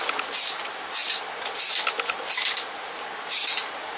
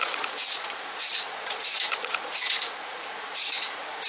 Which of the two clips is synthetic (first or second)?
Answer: second